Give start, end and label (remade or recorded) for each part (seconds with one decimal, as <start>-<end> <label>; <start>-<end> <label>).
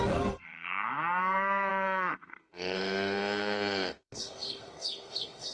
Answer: 0.0-5.5 remade